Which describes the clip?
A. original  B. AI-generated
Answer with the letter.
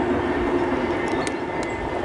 A